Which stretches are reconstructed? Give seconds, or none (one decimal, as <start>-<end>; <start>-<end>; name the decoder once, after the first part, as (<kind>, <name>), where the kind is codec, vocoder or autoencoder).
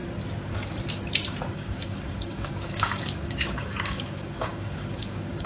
1.5-5.5 (codec, DAC)